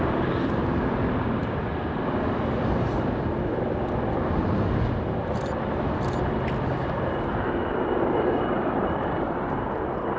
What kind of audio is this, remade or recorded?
recorded